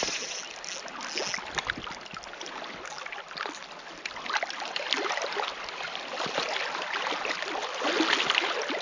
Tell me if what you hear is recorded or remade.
recorded